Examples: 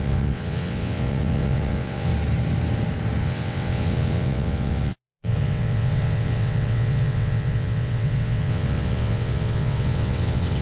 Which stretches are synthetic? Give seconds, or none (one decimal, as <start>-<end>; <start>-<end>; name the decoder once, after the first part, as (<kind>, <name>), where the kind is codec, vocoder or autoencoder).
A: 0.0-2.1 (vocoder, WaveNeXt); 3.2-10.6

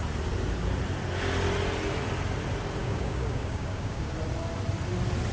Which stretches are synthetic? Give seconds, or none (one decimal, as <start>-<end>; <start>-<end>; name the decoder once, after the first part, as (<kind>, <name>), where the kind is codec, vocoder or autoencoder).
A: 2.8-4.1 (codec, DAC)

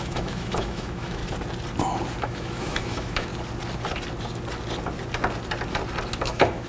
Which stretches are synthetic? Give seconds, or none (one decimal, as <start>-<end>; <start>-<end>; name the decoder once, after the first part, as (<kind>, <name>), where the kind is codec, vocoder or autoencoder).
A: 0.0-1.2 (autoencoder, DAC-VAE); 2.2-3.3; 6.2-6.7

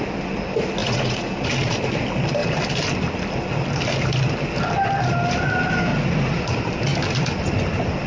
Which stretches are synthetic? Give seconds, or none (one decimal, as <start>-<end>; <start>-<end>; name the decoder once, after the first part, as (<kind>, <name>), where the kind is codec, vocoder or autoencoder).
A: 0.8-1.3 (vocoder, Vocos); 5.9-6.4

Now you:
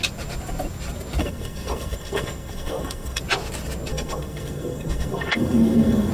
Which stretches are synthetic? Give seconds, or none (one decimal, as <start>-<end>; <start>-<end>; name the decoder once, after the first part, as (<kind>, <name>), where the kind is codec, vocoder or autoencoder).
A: 1.2-3.2 (codec, SNAC); 3.9-6.1

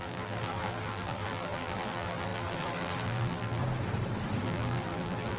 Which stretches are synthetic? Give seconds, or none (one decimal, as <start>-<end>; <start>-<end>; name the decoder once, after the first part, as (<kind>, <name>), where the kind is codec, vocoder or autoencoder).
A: 0.0-3.6 (vocoder, BigVGAN v2); 4.4-5.4

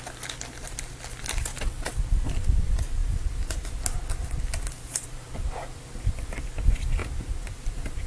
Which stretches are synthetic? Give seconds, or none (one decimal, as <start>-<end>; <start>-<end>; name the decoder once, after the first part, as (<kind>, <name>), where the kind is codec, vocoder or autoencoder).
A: 1.5-2.0 (vocoder, WaveNeXt)